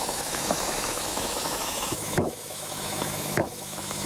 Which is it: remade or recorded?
remade